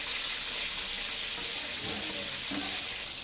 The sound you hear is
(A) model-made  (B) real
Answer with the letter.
B